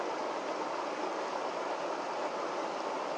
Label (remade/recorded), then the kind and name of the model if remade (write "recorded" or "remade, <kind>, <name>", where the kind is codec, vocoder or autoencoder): recorded